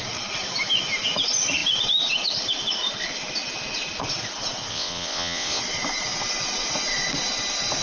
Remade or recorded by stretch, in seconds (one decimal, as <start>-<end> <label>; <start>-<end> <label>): 0.0-4.7 recorded; 4.7-5.6 remade; 5.6-7.8 recorded